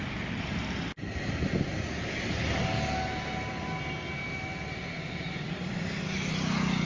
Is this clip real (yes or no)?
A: yes